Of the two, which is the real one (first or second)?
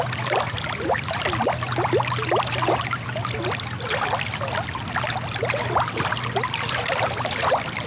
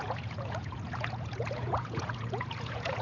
first